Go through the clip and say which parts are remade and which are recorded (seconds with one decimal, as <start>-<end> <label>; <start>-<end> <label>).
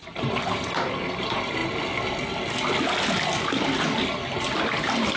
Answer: 0.0-0.9 remade; 0.9-5.2 recorded